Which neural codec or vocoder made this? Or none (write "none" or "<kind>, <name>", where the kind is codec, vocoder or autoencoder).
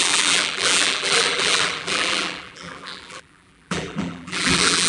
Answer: vocoder, BigVGAN v2